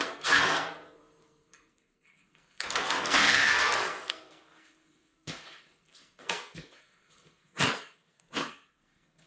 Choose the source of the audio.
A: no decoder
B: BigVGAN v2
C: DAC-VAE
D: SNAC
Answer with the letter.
D